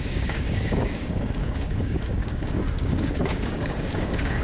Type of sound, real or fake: fake